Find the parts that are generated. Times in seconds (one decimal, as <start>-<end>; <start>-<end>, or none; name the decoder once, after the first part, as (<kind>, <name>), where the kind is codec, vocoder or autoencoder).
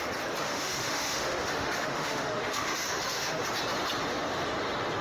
0.4-3.4 (autoencoder, DAC-VAE)